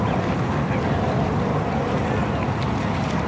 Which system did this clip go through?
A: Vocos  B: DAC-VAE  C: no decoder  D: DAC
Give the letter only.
C